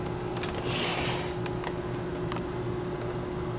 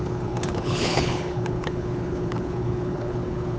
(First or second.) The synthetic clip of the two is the second